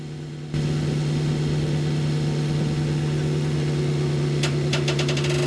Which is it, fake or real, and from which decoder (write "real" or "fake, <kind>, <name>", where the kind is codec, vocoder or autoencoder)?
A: real